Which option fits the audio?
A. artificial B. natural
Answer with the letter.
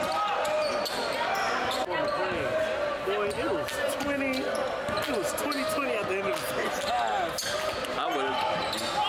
B